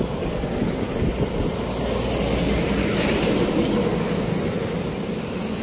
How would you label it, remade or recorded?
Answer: recorded